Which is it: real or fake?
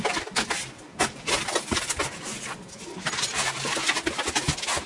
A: real